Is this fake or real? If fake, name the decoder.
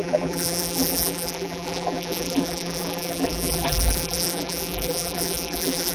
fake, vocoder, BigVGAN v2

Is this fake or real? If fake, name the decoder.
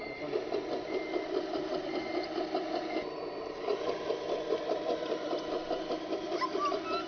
fake, vocoder, BigVGAN v2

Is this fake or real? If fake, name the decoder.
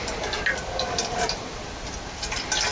fake, vocoder, BigVGAN v2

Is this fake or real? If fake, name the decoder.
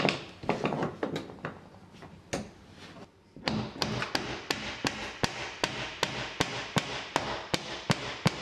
real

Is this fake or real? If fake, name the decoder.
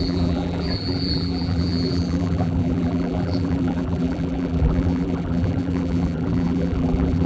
fake, vocoder, BigVGAN v2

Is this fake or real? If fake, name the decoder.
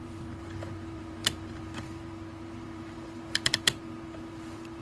fake, vocoder, BigVGAN v2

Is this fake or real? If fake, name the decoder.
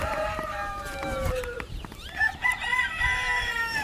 fake, vocoder, BigVGAN v2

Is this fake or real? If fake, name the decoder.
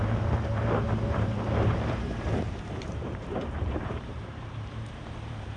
fake, vocoder, BigVGAN v2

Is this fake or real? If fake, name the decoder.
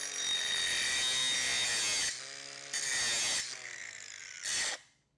real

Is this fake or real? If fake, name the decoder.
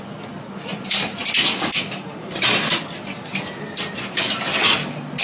real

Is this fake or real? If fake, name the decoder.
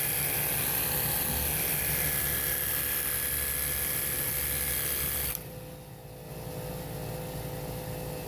real